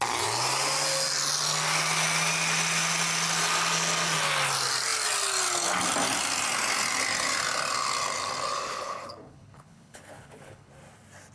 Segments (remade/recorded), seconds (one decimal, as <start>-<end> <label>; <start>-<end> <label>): 0.0-8.7 recorded; 8.7-10.7 remade; 10.7-11.3 recorded